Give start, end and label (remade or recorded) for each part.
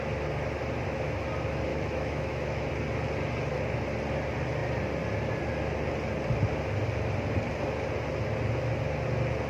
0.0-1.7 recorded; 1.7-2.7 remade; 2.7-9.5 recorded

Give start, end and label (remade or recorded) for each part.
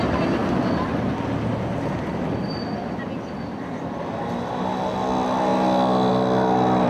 0.0-6.9 recorded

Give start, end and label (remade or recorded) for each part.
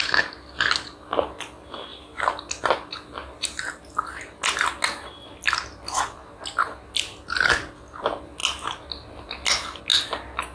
0.0-10.5 recorded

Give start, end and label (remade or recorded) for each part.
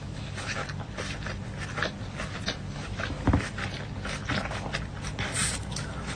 0.0-0.6 remade; 0.6-2.7 recorded; 2.7-3.6 remade; 3.6-5.5 recorded; 5.5-6.2 remade